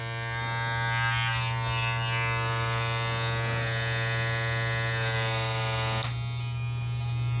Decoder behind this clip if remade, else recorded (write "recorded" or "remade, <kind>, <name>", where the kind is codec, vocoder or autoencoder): recorded